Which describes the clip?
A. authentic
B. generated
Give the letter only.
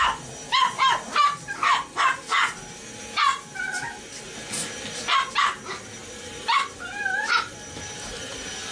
A